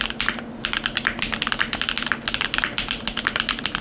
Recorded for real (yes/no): yes